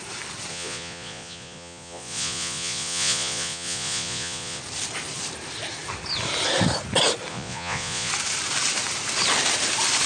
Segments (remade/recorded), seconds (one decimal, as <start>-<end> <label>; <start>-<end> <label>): 0.0-0.5 recorded; 0.5-4.6 remade; 4.6-7.3 recorded; 7.3-8.1 remade; 8.1-10.1 recorded